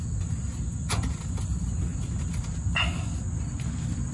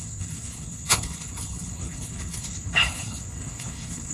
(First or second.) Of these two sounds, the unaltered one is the first